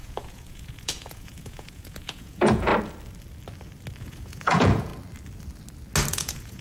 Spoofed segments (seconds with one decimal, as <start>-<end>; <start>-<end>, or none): 0.0-2.7; 4.0-4.9; 6.1-6.6